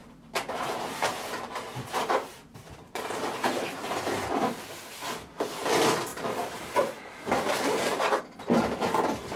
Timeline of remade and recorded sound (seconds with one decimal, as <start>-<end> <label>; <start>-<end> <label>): 0.0-4.2 remade; 4.2-6.1 recorded; 6.1-8.2 remade; 8.2-9.4 recorded

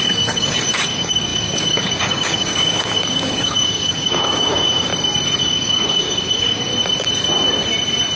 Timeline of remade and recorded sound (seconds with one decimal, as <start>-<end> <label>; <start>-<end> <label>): 0.0-4.9 remade; 4.9-5.4 recorded; 5.4-6.7 remade; 6.7-8.2 recorded

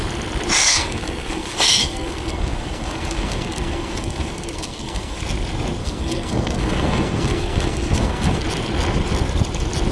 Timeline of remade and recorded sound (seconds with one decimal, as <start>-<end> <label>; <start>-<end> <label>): 0.0-0.6 recorded; 0.6-5.2 remade; 5.2-5.8 recorded; 5.8-8.4 remade; 8.4-9.9 recorded

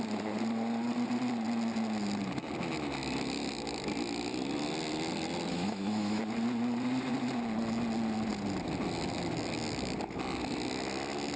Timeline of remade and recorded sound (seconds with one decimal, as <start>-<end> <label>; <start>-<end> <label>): 0.0-5.5 recorded; 5.5-6.2 remade; 6.2-11.4 recorded